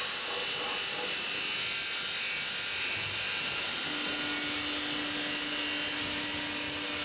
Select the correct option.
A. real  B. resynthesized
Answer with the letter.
A